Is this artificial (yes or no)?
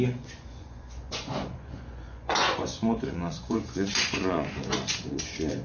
yes